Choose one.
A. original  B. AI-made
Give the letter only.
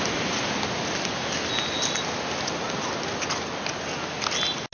A